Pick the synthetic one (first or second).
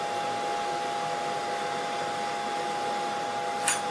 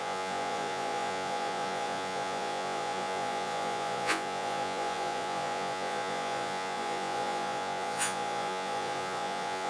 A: second